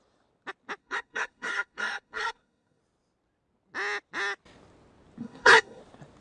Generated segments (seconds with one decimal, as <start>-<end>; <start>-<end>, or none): 0.8-2.8; 5.2-5.8